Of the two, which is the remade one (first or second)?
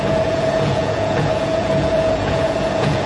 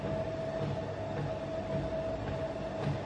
first